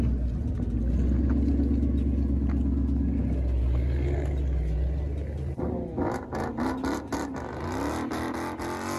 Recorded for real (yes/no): yes